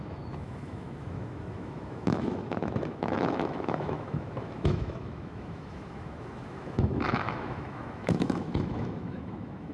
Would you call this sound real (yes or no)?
no